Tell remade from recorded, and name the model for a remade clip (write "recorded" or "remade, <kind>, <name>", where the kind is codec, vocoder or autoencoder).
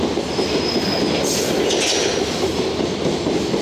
recorded